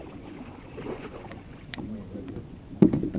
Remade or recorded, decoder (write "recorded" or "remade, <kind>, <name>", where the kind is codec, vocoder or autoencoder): remade, vocoder, Vocos